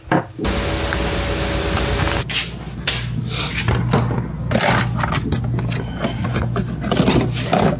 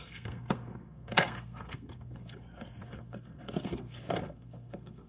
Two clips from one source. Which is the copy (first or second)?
second